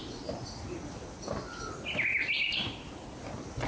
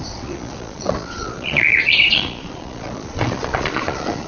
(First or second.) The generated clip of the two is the second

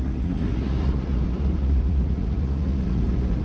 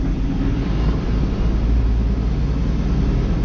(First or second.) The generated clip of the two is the first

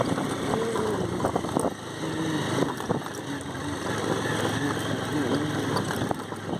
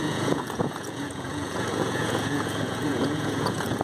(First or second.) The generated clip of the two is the second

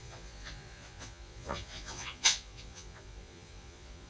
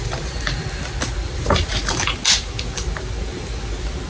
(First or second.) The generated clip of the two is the first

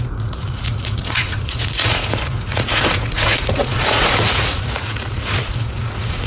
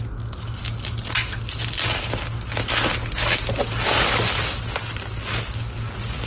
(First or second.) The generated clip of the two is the first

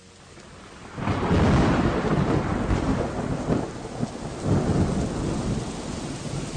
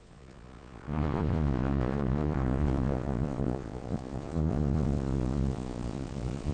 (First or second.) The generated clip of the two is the second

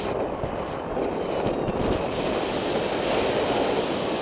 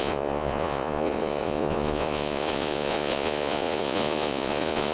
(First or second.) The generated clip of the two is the second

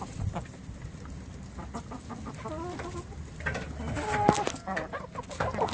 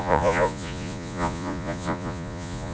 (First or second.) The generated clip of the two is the second